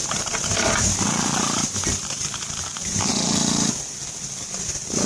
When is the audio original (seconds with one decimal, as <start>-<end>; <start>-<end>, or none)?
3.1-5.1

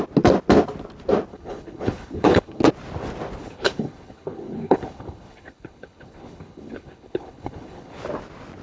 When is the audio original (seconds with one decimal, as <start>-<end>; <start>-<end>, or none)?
0.0-1.3; 2.6-3.4; 8.0-8.6

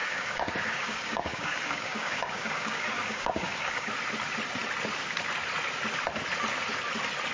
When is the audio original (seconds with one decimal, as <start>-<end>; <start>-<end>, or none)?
3.9-7.3

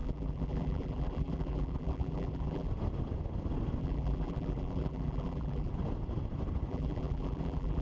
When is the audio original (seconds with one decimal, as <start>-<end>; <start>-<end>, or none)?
2.7-3.8; 5.7-6.7

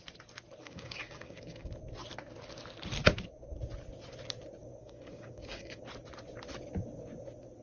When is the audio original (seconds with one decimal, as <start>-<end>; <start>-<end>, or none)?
0.0-0.6; 1.7-4.8; 5.8-7.6

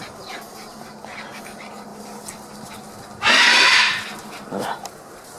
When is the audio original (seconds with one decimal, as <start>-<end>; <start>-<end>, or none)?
0.0-1.9; 4.6-5.4